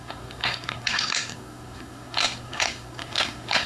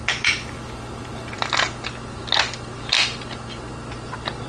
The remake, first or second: first